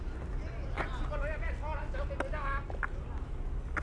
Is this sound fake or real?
real